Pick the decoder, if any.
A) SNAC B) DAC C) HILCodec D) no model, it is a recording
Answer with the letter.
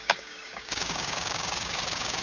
B